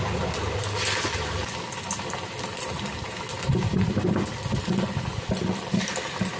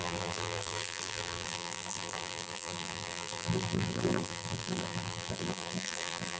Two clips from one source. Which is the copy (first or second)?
second